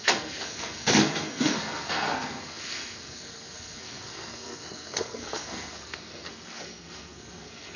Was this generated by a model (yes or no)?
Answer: yes